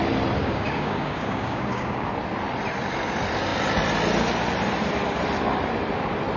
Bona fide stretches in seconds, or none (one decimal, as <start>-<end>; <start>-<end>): 0.0-0.4; 2.1-6.4